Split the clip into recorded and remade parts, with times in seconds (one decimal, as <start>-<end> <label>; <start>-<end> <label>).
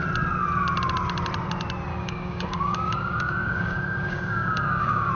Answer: 0.0-1.9 recorded; 1.9-5.1 remade